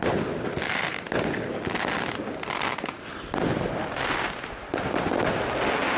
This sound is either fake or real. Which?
real